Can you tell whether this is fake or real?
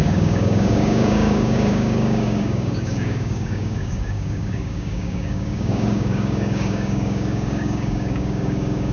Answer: fake